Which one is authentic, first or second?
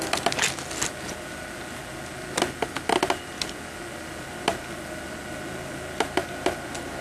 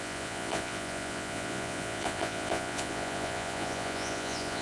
first